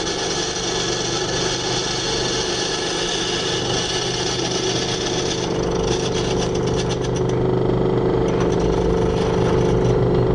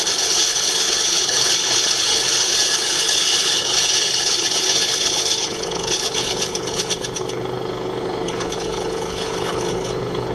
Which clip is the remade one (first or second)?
second